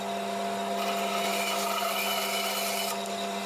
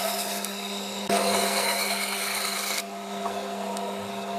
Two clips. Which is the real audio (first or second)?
first